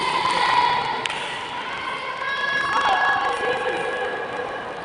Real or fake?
real